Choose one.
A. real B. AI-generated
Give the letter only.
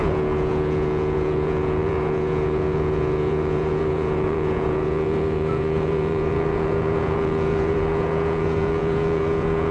B